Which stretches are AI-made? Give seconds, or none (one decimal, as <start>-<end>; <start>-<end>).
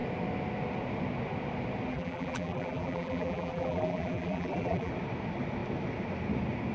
1.9-4.9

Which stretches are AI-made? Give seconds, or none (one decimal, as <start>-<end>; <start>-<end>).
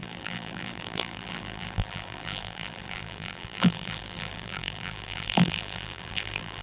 0.0-6.6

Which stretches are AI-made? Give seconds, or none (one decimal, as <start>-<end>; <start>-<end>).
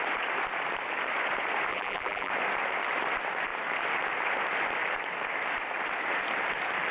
1.7-2.3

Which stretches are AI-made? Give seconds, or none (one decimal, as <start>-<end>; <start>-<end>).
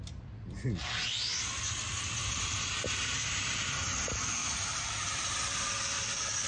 2.2-3.8; 4.4-5.3